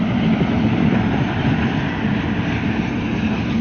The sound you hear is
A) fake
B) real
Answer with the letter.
A